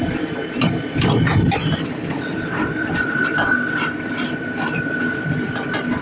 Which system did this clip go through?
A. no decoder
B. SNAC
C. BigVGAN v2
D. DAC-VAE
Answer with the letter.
C